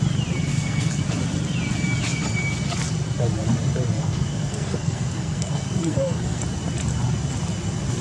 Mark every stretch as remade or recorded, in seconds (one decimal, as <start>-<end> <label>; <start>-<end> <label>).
0.0-0.5 recorded; 0.5-1.0 remade; 1.0-4.0 recorded; 4.0-6.4 remade; 6.4-8.0 recorded